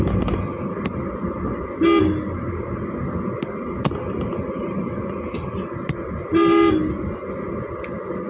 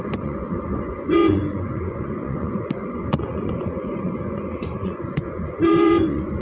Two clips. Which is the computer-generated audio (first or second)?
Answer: second